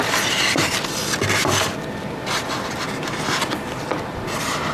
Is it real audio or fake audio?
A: real